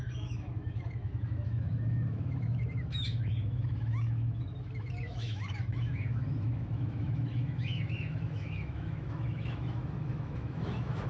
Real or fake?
fake